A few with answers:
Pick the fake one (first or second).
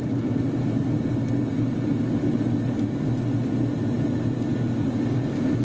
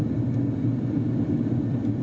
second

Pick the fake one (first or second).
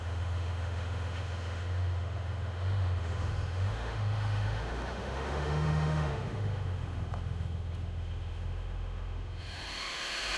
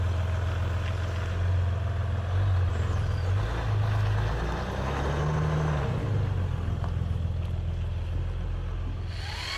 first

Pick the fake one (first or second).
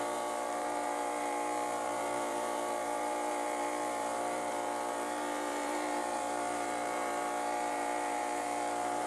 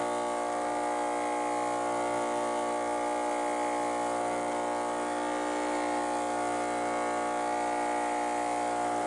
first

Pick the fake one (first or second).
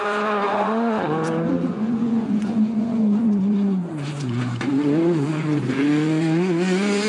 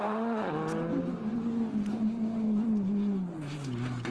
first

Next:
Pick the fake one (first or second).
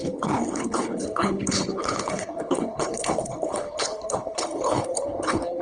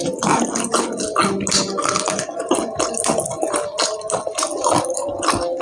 first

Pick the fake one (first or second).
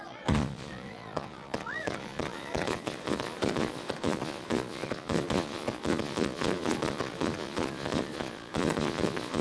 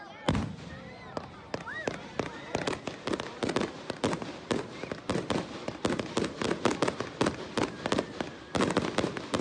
first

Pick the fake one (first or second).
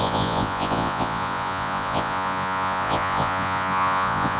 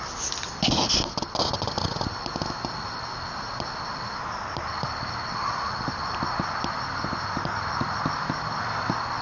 first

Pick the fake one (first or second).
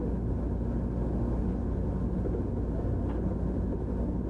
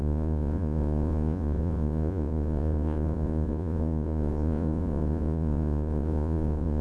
second